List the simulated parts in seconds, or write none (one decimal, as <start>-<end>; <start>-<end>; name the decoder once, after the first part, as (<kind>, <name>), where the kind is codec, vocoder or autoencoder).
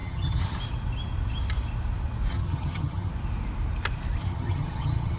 0.0-0.6 (vocoder, HiFi-GAN); 2.3-3.1; 4.2-5.2